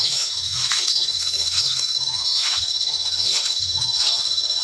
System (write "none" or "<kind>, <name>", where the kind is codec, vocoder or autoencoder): autoencoder, DAC-VAE